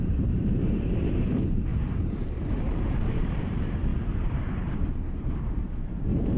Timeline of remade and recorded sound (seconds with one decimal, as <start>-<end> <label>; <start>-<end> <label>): 0.0-3.9 remade; 3.9-4.6 recorded; 4.6-6.4 remade